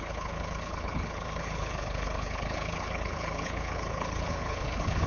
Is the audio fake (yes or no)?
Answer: yes